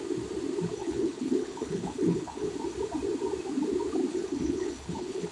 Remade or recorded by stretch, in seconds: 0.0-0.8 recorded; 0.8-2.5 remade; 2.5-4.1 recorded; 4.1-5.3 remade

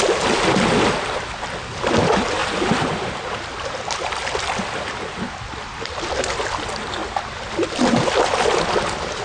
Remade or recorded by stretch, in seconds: 0.0-2.4 recorded; 2.4-2.9 remade; 2.9-3.5 recorded; 3.5-4.2 remade; 4.2-9.2 recorded

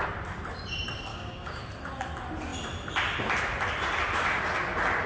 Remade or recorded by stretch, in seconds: 0.0-1.1 recorded; 1.1-1.6 remade; 1.6-5.1 recorded

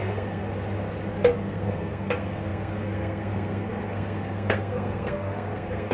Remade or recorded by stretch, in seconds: 0.0-0.4 remade; 0.4-1.1 recorded; 1.1-5.9 remade

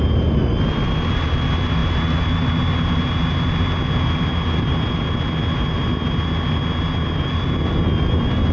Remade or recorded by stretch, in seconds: 0.0-8.5 recorded

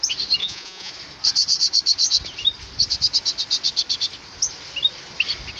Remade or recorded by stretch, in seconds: 0.0-0.4 recorded; 0.4-0.9 remade; 0.9-5.6 recorded

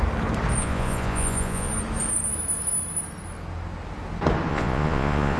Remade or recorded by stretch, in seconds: 0.0-0.6 recorded; 0.6-1.7 remade; 1.7-4.5 recorded; 4.5-5.4 remade

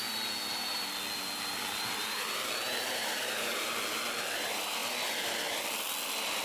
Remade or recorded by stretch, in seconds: 0.0-3.0 recorded; 3.0-3.6 remade; 3.6-6.4 recorded